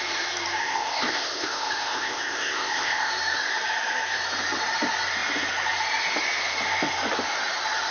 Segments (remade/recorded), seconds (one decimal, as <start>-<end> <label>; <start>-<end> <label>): 0.0-0.6 recorded; 0.6-3.1 remade; 3.1-7.9 recorded